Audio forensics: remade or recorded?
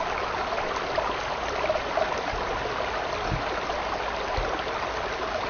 recorded